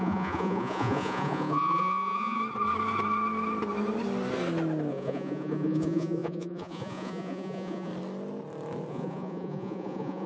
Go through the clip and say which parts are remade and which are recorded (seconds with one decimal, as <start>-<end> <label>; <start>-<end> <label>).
0.0-2.4 remade; 2.4-4.9 recorded; 4.9-7.9 remade; 7.9-8.9 recorded; 8.9-10.3 remade